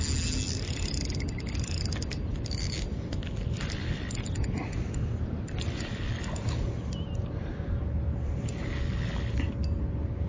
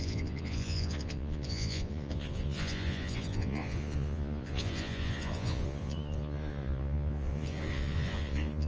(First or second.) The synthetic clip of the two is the second